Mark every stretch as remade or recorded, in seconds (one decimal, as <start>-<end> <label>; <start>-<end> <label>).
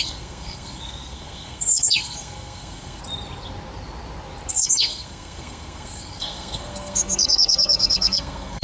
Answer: 0.0-3.0 remade; 3.0-4.5 recorded; 4.5-8.6 remade